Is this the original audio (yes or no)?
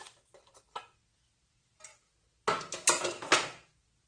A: yes